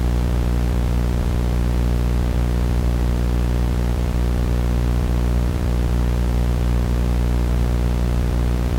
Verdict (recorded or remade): remade